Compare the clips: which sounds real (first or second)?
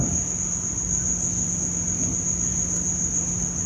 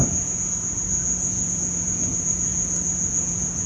first